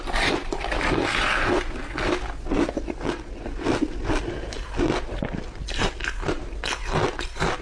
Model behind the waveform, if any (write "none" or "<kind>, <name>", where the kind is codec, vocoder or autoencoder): none